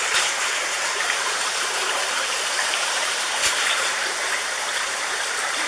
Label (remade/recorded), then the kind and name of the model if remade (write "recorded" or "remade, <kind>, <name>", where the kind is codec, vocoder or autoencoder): remade, vocoder, BigVGAN v2